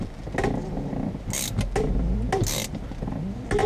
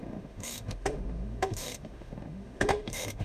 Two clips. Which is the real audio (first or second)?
first